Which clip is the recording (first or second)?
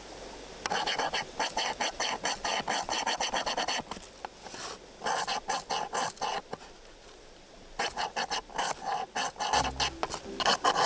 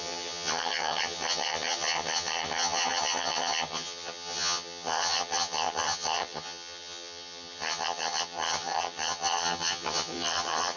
first